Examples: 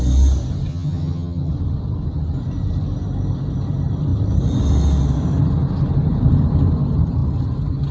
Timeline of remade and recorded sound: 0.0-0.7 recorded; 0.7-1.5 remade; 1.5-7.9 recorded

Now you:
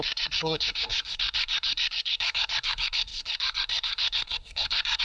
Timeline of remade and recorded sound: 0.0-5.0 remade

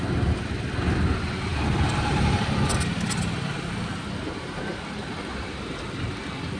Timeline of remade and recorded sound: 0.0-6.6 recorded

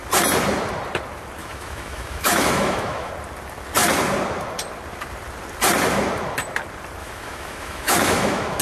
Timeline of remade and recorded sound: 0.0-1.4 recorded; 1.4-3.1 remade; 3.1-7.0 recorded; 7.0-8.6 remade

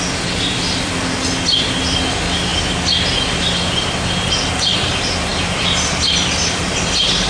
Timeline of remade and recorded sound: 0.0-7.3 recorded

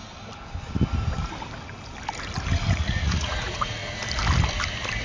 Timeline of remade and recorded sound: 0.0-2.7 recorded; 2.7-3.8 remade; 3.8-5.0 recorded

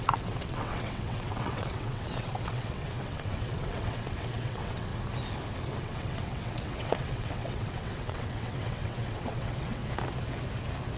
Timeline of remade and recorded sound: 0.0-4.9 remade; 4.9-5.8 recorded; 5.8-9.8 remade; 9.8-11.0 recorded

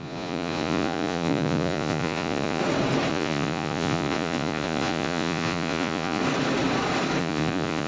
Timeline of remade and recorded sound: 0.0-2.6 remade; 2.6-3.1 recorded; 3.1-6.2 remade; 6.2-7.2 recorded; 7.2-7.9 remade